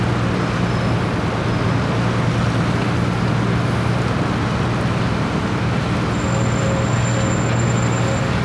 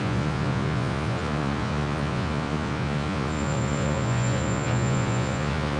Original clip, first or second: first